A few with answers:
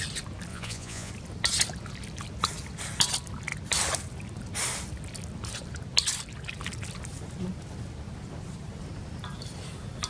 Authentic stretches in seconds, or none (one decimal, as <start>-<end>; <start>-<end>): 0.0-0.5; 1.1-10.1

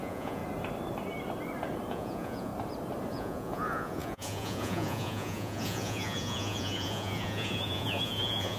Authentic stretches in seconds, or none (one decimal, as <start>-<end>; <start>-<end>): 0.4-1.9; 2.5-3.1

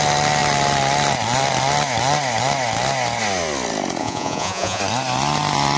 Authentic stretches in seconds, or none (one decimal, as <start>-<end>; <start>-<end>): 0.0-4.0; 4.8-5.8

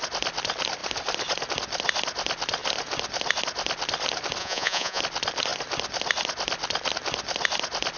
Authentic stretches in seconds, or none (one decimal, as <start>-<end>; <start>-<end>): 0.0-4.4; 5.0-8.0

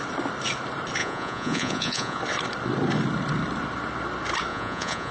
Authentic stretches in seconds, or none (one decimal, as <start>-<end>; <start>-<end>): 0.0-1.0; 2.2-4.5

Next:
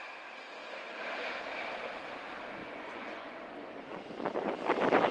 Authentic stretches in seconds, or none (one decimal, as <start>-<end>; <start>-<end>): 0.0-2.6; 4.5-5.1

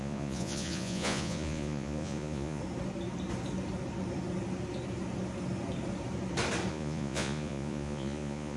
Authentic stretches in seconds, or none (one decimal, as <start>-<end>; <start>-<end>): 2.6-6.7